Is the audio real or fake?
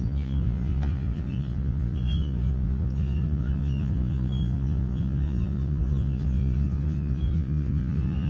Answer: fake